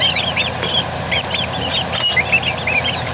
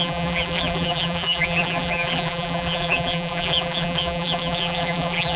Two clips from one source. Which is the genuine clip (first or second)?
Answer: first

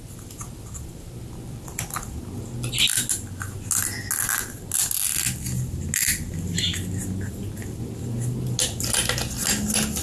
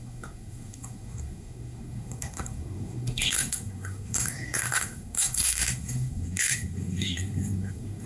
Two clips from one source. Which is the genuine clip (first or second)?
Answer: first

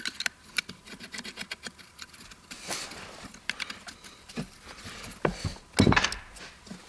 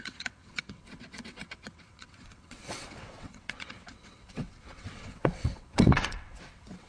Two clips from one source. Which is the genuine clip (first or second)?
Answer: first